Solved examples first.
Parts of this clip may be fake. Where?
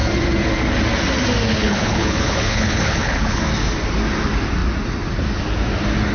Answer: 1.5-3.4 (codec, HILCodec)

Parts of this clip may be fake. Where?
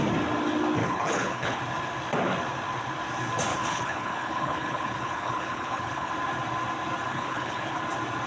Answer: 0.8-1.6 (codec, HILCodec); 3.5-6.1; 7.1-7.8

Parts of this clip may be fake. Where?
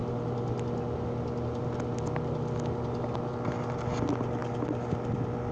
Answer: none